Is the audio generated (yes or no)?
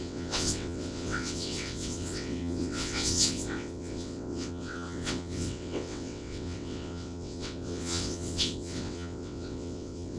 yes